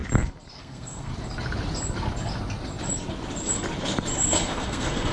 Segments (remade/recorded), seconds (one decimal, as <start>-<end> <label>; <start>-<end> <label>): 0.0-0.6 recorded; 0.6-1.1 remade; 1.1-4.2 recorded; 4.2-5.1 remade

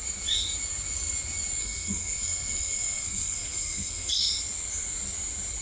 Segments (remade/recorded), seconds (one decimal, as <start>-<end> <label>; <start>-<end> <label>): 0.0-1.6 recorded; 1.6-4.1 remade; 4.1-5.6 recorded